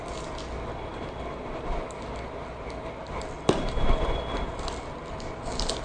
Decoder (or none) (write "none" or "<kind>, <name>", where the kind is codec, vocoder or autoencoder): none